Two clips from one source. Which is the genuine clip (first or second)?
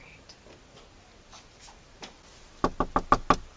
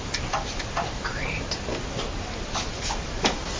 first